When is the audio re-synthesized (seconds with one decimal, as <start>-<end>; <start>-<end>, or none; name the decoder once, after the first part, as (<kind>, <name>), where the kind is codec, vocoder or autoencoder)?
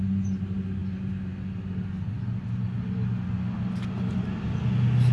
none